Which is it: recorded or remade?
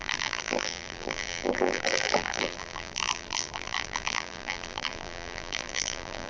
remade